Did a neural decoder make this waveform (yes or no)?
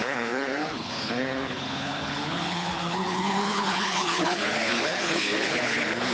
yes